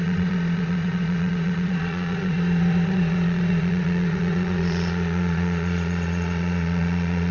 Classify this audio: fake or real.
fake